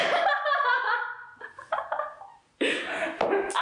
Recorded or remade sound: recorded